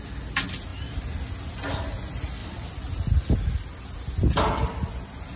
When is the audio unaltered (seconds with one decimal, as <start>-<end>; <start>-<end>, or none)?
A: 0.0-5.4